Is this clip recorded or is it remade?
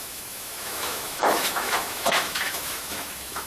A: remade